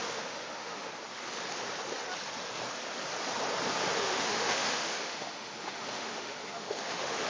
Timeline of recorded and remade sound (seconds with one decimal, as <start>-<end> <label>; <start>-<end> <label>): 0.0-0.9 remade; 0.9-4.0 recorded; 4.0-7.3 remade